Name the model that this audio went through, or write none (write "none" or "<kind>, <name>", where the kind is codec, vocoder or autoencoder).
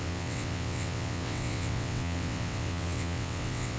vocoder, WaveNeXt